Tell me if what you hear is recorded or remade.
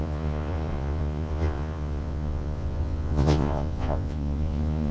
remade